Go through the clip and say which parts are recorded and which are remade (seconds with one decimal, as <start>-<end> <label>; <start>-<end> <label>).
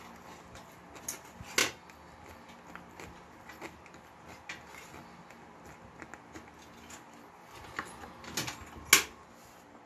0.0-9.9 recorded